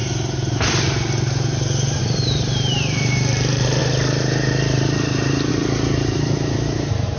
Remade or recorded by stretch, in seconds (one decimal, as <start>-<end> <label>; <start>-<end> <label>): 0.0-2.0 recorded; 2.0-3.8 remade; 3.8-5.5 recorded; 5.5-7.2 remade